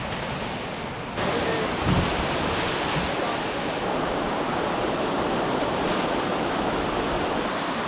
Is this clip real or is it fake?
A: real